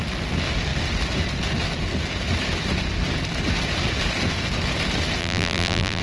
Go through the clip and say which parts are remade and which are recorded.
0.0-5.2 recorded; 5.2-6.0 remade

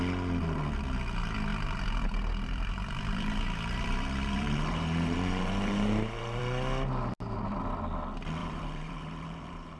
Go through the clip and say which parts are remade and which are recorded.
0.0-1.5 recorded; 1.5-6.4 remade; 6.4-8.4 recorded; 8.4-9.8 remade

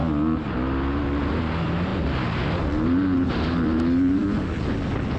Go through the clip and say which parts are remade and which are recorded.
0.0-5.2 recorded

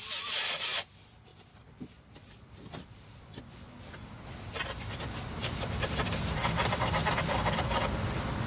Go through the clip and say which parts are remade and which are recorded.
0.0-8.5 remade

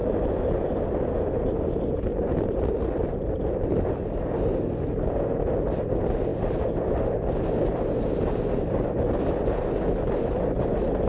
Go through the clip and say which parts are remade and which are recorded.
0.0-0.7 remade; 0.7-2.1 recorded; 2.1-3.9 remade; 3.9-11.1 recorded